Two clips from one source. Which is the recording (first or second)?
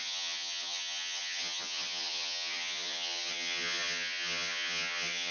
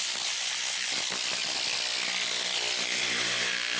second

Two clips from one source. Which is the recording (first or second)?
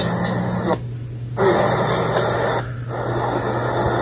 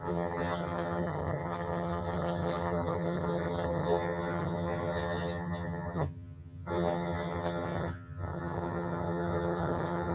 first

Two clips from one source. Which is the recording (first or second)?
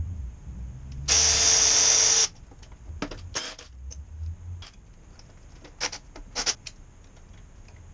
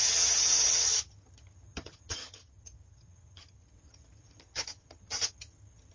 first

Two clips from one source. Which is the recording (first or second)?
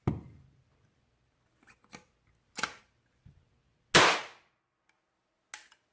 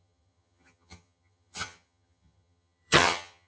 first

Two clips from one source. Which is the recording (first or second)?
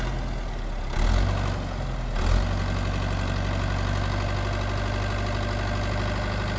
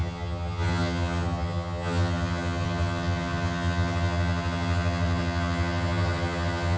first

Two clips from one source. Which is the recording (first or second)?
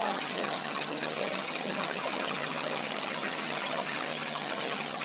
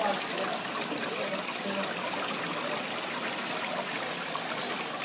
second